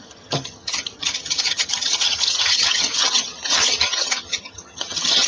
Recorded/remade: remade